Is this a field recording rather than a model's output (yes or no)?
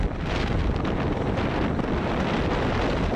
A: yes